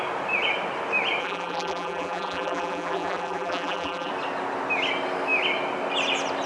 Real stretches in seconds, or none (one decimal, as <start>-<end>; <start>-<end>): 0.0-1.2; 4.1-6.5